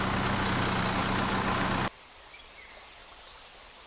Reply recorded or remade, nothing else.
recorded